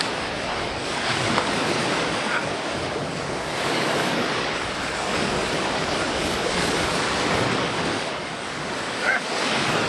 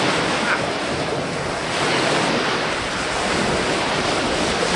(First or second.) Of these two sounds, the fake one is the first